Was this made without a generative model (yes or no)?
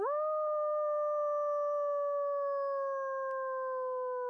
yes